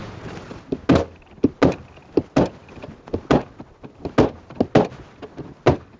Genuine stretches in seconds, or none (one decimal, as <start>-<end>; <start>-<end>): 0.0-6.0